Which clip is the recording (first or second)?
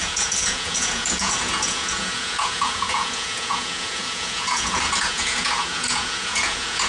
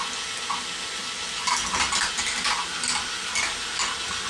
second